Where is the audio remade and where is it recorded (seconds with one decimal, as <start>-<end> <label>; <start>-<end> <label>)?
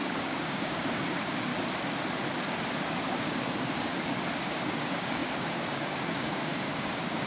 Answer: 0.0-1.5 remade; 1.5-3.0 recorded; 3.0-3.9 remade; 3.9-4.5 recorded; 4.5-7.3 remade